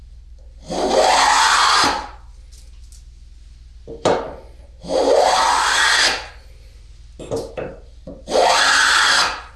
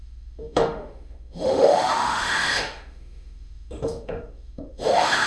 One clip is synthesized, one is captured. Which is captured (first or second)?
first